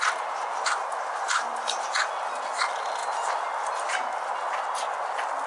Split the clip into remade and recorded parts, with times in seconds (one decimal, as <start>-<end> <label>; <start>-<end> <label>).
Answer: 0.0-5.5 recorded